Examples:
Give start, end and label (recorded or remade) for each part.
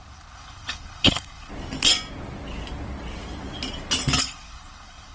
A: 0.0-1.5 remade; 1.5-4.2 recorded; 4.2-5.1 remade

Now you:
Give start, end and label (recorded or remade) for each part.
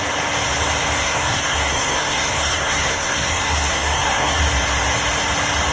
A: 0.0-1.0 recorded; 1.0-4.4 remade; 4.4-5.7 recorded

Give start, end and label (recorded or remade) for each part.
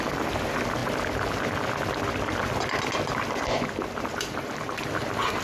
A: 0.0-0.8 remade; 0.8-4.0 recorded; 4.0-5.4 remade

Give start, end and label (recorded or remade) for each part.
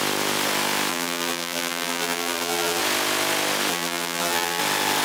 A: 0.0-0.9 recorded; 0.9-2.8 remade; 2.8-3.7 recorded; 3.7-4.6 remade; 4.6-5.0 recorded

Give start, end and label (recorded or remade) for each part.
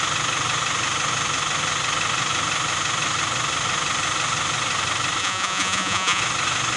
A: 0.0-5.2 recorded; 5.2-6.2 remade; 6.2-6.8 recorded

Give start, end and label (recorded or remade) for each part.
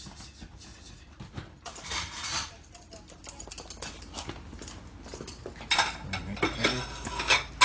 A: 0.0-7.6 recorded